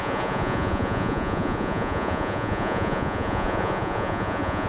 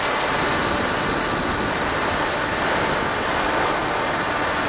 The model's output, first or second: first